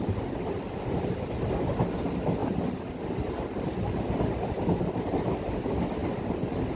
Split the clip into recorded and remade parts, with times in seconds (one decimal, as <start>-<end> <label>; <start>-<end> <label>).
0.0-6.8 recorded